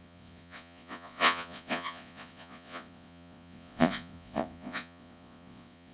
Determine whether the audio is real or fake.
fake